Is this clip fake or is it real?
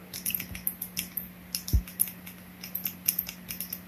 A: real